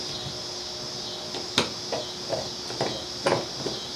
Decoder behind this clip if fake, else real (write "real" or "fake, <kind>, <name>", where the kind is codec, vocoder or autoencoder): real